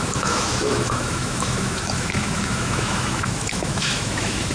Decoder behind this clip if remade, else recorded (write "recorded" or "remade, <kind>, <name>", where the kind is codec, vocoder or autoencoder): remade, autoencoder, DAC-VAE